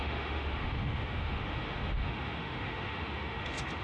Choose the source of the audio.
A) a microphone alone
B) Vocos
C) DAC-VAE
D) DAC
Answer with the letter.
C